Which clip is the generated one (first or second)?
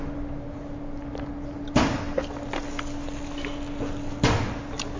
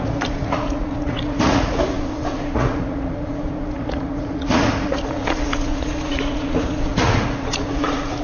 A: second